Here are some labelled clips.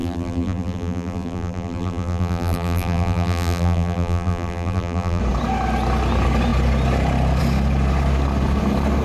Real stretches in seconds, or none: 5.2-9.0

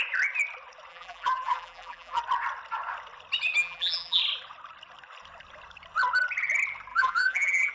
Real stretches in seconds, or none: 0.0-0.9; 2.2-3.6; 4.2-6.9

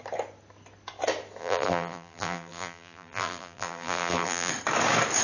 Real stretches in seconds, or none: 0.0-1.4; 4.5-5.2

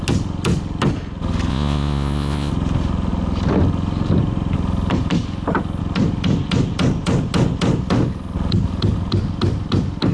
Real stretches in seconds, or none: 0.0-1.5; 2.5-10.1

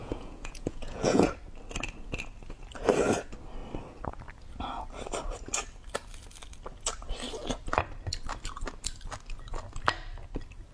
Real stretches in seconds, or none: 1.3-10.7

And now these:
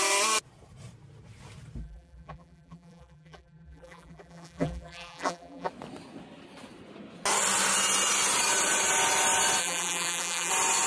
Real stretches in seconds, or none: 0.0-1.8; 5.7-9.6; 10.5-10.9

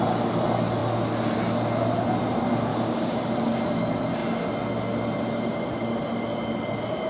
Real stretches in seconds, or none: 0.0-2.7; 3.3-7.1

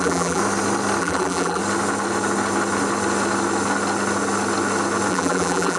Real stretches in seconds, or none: 0.4-1.0; 1.6-5.1